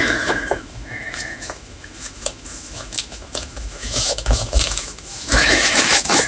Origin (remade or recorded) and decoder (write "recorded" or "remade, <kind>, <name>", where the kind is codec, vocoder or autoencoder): remade, autoencoder, DAC-VAE